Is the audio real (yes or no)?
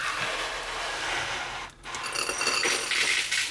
yes